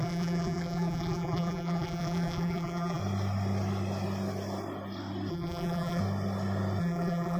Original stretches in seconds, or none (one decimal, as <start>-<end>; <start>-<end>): 3.0-5.3; 6.0-6.8